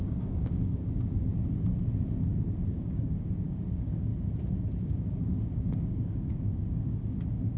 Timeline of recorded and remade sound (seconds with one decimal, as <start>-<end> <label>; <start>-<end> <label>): 0.0-1.3 remade; 1.3-2.7 recorded; 2.7-4.1 remade; 4.1-4.8 recorded; 4.8-7.6 remade